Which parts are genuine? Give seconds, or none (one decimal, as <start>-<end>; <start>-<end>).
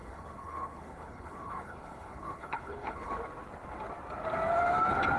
3.1-5.2